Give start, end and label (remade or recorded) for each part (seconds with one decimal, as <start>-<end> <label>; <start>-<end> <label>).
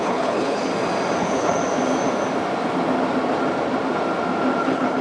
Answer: 0.0-0.7 remade; 0.7-1.2 recorded; 1.2-1.6 remade; 1.6-4.6 recorded; 4.6-5.0 remade